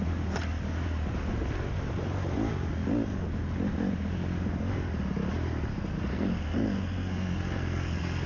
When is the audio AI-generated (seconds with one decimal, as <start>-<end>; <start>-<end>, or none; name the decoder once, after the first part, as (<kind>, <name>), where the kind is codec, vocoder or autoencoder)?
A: 6.1-8.3 (codec, SNAC)